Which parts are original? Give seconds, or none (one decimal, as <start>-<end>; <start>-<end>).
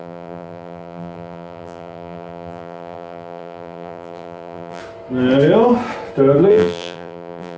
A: 4.8-6.5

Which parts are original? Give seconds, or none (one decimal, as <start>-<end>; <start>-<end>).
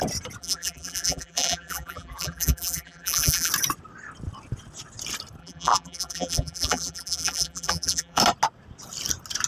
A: 0.0-0.4; 3.5-5.4; 8.2-9.5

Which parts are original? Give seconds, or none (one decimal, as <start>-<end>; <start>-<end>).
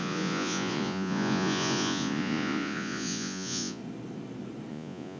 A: 3.8-4.7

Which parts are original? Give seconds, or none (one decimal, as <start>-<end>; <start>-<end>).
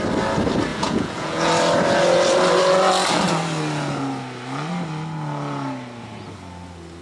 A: 0.0-0.7; 1.5-7.0